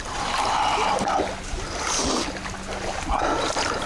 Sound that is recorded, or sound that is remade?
recorded